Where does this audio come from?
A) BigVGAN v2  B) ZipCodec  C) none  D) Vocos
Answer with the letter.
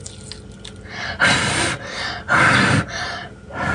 C